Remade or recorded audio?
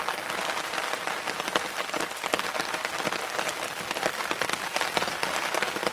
recorded